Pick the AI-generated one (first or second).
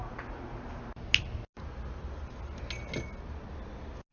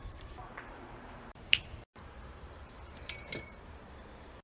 second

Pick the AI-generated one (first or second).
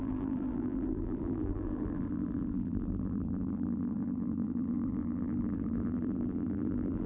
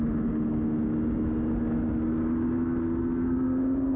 first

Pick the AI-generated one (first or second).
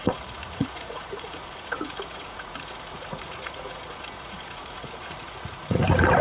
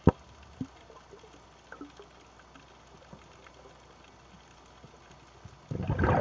first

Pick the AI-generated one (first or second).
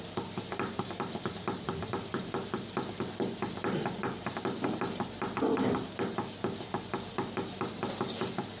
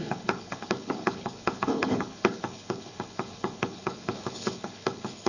second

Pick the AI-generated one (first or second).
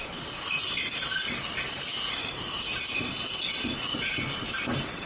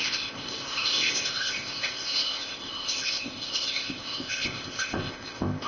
second